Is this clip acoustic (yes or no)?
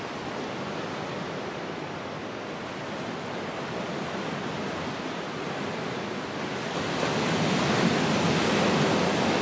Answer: yes